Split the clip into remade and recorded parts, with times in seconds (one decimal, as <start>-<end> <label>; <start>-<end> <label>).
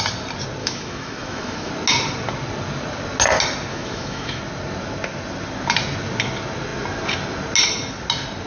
0.0-0.6 recorded; 0.6-1.7 remade; 1.7-3.7 recorded; 3.7-4.4 remade; 4.4-8.5 recorded